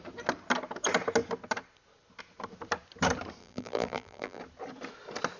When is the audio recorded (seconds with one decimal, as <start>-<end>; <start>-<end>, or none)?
0.0-3.4; 4.4-5.4